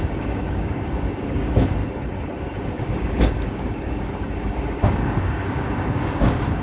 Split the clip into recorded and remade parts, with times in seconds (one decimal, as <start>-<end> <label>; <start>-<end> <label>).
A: 0.0-1.8 remade; 1.8-2.4 recorded; 2.4-6.6 remade